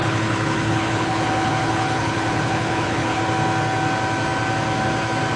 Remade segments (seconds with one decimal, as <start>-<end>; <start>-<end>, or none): 0.0-3.2